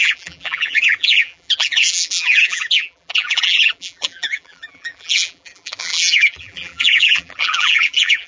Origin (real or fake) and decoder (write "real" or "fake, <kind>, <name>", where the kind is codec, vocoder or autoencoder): fake, vocoder, BigVGAN v2